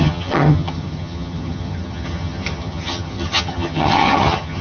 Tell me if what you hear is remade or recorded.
remade